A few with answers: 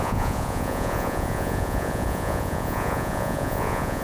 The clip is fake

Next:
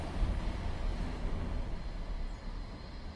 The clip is real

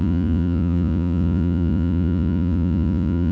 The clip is fake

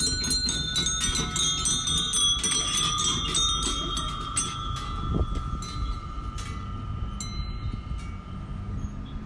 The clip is real